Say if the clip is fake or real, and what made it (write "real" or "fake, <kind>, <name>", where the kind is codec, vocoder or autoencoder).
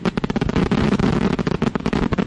fake, vocoder, BigVGAN v2